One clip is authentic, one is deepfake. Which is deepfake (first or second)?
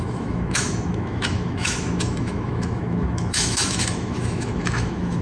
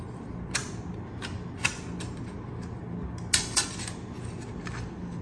first